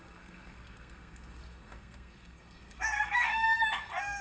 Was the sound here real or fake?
fake